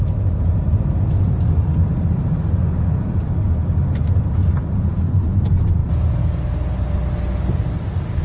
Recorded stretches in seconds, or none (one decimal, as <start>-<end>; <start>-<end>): 0.0-8.2